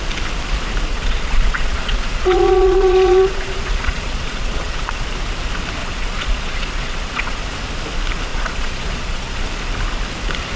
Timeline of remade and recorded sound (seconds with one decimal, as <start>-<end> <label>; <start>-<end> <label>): 0.0-0.9 recorded; 0.9-5.0 remade; 5.0-5.8 recorded; 5.8-7.4 remade; 7.4-8.3 recorded; 8.3-9.4 remade; 9.4-10.6 recorded